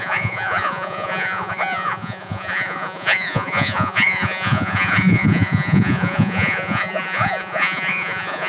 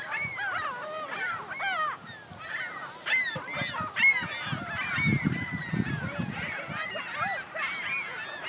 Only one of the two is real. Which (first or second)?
second